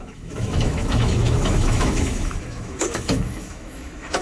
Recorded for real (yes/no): no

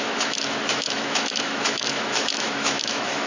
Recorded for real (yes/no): no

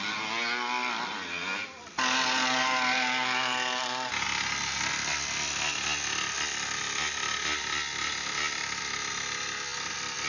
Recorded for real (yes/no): yes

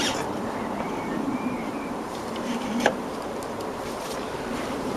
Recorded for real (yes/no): no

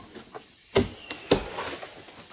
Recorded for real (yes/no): yes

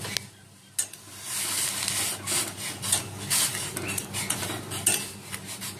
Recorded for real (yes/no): yes